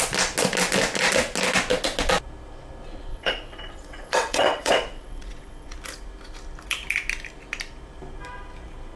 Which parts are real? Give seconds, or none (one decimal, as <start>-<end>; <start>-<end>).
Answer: 0.0-3.1; 5.7-9.0